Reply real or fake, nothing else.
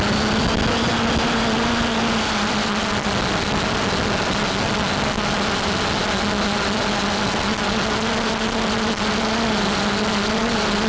real